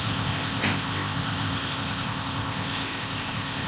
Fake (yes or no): yes